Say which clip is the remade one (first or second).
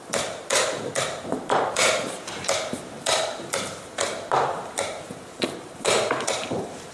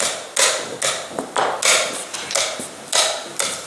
first